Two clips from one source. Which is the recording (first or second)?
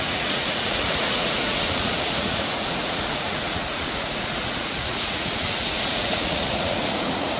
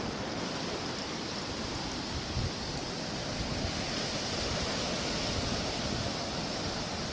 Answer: second